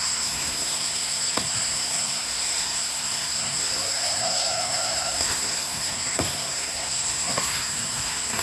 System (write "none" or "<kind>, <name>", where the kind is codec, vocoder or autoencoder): codec, SNAC